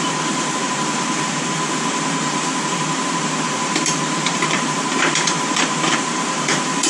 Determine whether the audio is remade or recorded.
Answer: remade